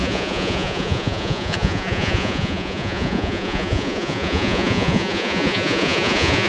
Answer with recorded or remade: remade